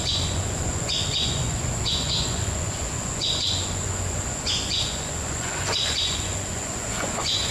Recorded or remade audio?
remade